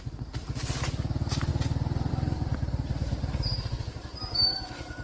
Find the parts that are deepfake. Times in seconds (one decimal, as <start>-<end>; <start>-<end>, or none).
0.0-1.5; 2.1-5.0